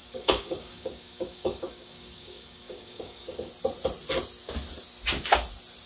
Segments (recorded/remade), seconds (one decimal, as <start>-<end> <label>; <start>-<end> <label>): 0.0-3.5 remade; 3.5-5.9 recorded